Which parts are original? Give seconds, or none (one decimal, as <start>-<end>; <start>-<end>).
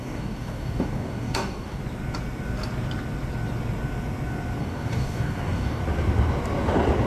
1.8-4.6; 5.8-7.1